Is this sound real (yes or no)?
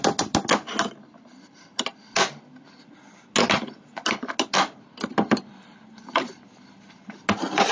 yes